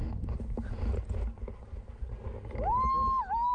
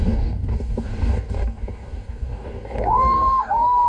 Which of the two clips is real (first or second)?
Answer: first